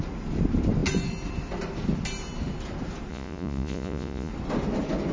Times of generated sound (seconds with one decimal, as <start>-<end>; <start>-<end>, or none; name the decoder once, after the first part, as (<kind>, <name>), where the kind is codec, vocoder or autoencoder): 3.1-4.3 (vocoder, Vocos)